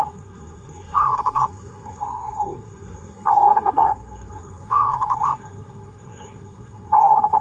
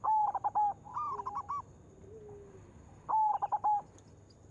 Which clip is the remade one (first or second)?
first